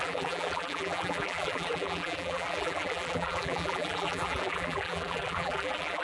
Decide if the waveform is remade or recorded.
remade